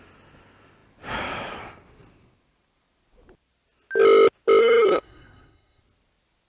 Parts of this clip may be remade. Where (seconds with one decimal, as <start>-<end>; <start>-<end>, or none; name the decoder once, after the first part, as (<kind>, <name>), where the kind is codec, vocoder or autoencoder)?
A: 4.6-5.8 (codec, SNAC)